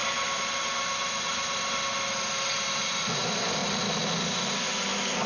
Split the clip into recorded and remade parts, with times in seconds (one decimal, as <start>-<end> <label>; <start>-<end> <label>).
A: 0.0-5.3 recorded